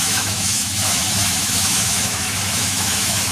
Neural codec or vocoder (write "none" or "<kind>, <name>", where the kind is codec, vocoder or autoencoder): autoencoder, DAC-VAE